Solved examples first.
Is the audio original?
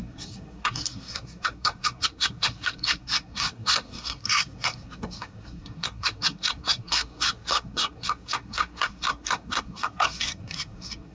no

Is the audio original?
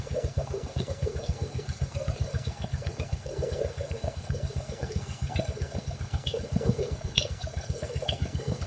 no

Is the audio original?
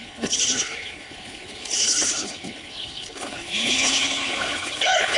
no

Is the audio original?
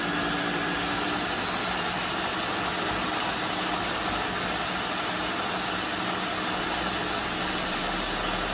yes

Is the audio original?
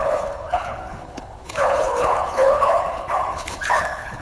no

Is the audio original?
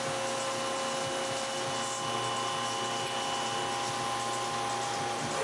yes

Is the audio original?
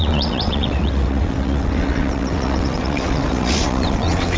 no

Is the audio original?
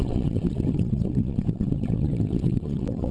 no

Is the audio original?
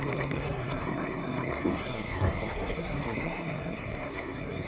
no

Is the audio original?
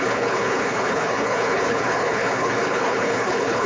no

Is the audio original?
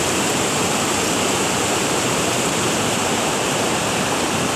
no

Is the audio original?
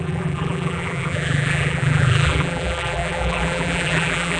no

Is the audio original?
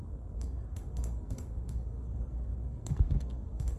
no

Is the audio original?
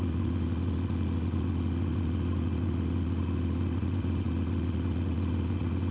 no